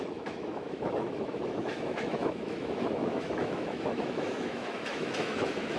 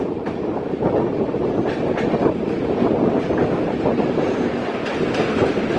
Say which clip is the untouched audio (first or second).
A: second